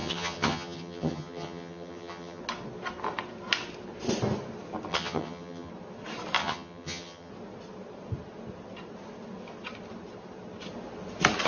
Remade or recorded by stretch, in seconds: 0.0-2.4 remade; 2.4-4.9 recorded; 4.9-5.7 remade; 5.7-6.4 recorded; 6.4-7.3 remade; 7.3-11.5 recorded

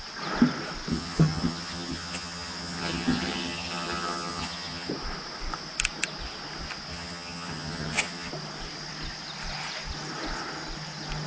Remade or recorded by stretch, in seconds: 0.0-0.9 recorded; 0.9-4.9 remade; 4.9-6.9 recorded; 6.9-8.3 remade; 8.3-11.3 recorded

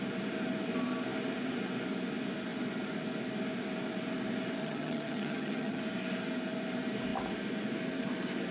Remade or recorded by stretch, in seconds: 0.0-4.6 recorded; 4.6-5.8 remade; 5.8-8.5 recorded

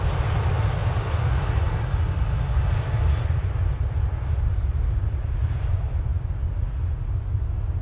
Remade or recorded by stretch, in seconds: 0.0-7.8 recorded

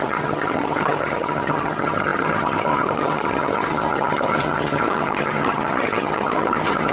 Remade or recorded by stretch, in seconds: 0.0-6.9 remade